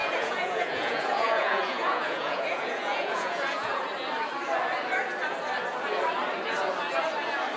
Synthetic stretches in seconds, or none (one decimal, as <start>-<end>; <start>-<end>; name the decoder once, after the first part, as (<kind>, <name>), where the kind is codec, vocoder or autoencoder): 0.0-3.8 (vocoder, Vocos)